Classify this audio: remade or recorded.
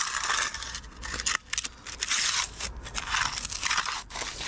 recorded